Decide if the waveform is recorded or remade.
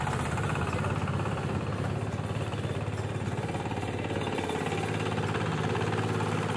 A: recorded